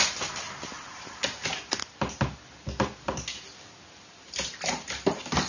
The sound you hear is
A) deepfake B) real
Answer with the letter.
B